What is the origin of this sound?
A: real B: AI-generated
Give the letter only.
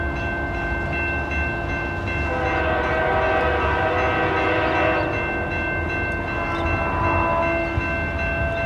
A